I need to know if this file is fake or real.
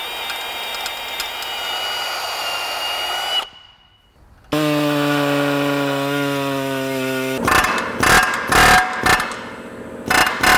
real